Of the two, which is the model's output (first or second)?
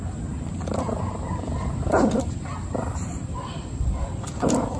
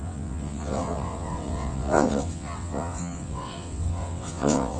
second